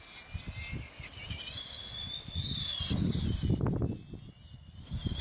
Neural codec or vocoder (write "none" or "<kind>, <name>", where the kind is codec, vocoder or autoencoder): none